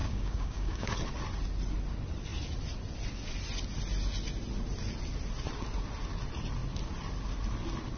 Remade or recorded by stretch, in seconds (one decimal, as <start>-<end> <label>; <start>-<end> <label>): 0.0-0.9 remade; 0.9-8.0 recorded